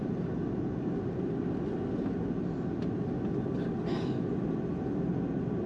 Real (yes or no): yes